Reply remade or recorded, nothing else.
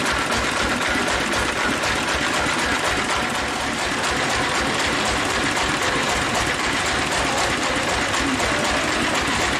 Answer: recorded